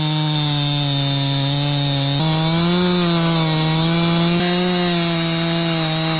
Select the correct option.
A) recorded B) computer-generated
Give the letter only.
A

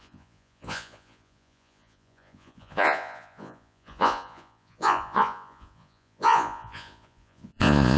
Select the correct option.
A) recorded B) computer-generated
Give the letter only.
B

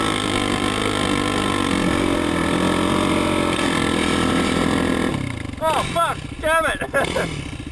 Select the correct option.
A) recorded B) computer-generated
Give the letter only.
A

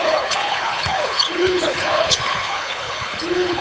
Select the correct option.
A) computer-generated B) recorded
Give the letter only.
A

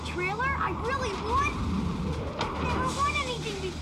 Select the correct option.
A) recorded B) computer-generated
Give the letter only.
A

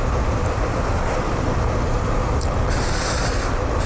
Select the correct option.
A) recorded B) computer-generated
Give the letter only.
A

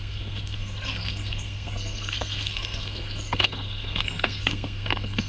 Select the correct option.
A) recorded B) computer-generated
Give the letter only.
B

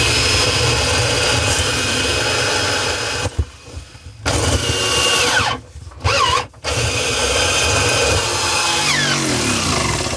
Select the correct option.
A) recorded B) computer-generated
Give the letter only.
A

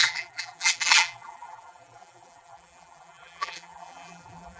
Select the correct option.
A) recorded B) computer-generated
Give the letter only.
B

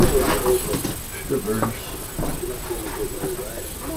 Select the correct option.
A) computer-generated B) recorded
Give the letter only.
B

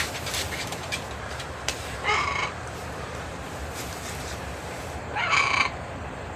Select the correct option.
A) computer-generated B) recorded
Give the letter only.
A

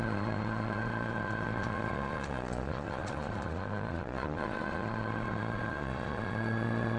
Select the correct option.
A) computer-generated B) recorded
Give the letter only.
A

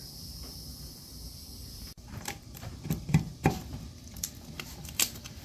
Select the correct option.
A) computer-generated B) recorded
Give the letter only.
A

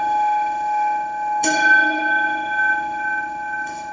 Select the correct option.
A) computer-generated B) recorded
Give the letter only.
A